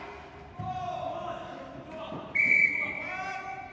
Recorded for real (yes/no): yes